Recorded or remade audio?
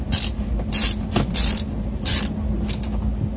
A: recorded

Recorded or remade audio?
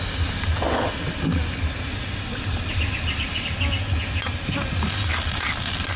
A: recorded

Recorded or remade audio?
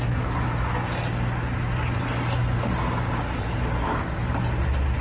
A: recorded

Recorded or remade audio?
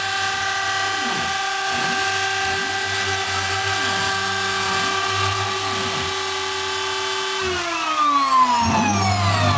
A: recorded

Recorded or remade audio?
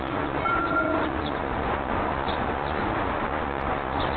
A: remade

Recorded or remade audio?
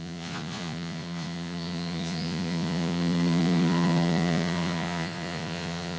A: remade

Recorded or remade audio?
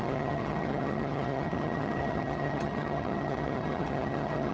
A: remade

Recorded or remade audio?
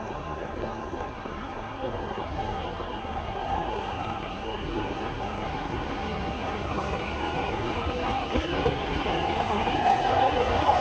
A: remade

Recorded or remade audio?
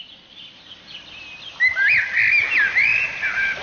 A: recorded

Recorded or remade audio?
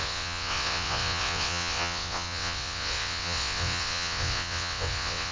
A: remade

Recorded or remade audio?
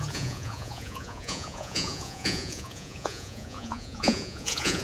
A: remade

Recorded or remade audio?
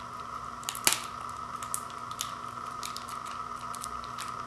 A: recorded